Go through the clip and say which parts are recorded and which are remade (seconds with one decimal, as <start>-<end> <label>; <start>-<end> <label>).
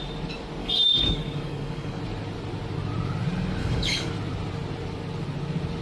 0.0-0.6 recorded; 0.6-2.0 remade; 2.0-3.6 recorded; 3.6-4.1 remade; 4.1-5.8 recorded